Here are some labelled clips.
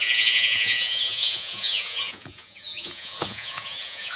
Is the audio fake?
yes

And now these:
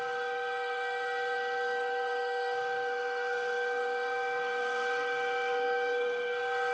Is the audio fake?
yes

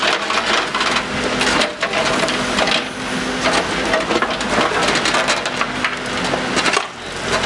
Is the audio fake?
no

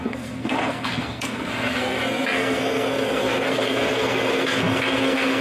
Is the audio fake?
yes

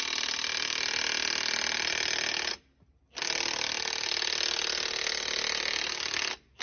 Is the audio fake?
no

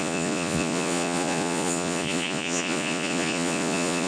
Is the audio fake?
yes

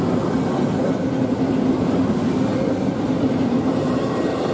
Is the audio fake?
no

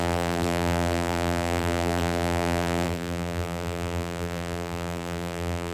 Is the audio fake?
yes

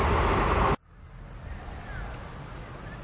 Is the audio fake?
no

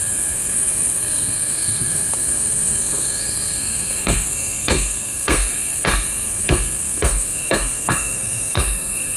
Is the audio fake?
yes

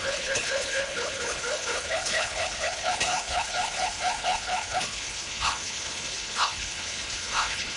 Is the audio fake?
yes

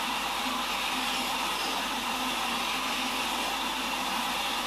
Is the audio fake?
no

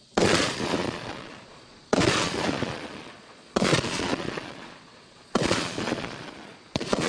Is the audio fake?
yes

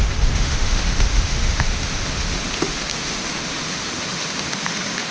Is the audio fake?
yes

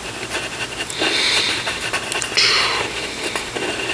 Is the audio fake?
no